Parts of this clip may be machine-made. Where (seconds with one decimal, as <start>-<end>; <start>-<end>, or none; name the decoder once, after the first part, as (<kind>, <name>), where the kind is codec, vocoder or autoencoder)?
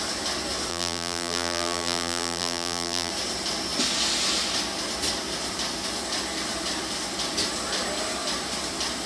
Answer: 0.7-3.1 (vocoder, BigVGAN v2)